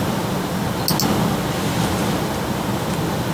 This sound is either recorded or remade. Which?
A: recorded